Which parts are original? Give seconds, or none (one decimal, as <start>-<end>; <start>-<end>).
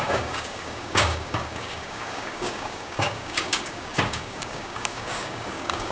none